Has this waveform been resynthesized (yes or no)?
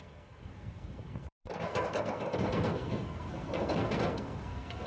yes